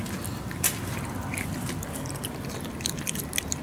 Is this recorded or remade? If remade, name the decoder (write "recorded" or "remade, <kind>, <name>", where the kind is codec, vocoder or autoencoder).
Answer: recorded